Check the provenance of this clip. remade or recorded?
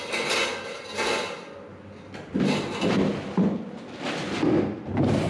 recorded